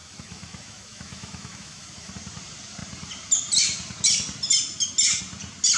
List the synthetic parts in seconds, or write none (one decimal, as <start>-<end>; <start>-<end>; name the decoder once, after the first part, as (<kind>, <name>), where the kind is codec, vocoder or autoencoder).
0.0-2.1 (autoencoder, DAC-VAE)